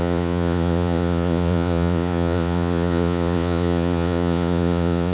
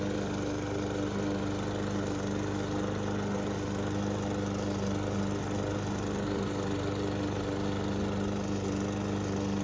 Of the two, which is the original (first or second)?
second